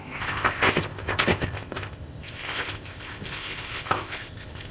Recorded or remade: remade